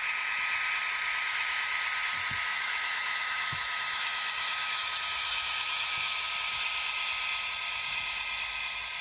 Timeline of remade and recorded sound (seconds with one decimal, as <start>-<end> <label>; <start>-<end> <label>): 0.0-2.5 recorded; 2.5-6.3 remade; 6.3-9.0 recorded